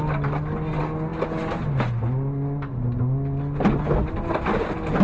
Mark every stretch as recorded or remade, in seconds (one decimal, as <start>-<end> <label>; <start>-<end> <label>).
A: 0.0-5.0 recorded